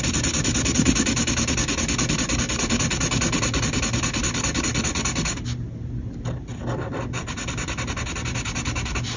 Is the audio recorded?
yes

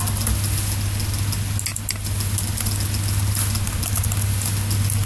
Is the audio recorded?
yes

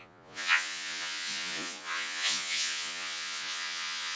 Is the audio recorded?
no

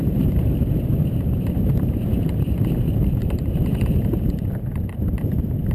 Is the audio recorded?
no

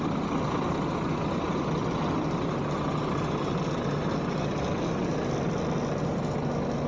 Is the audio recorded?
yes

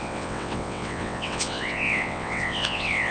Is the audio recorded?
no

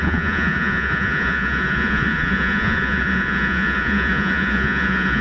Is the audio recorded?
no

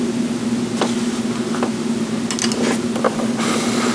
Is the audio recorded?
yes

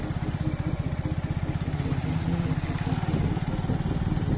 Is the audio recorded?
yes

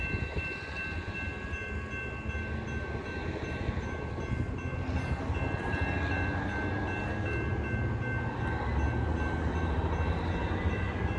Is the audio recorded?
yes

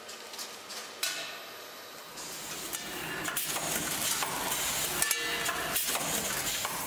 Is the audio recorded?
yes